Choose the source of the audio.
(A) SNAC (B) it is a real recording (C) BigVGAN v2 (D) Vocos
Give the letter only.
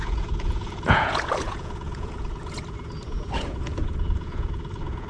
D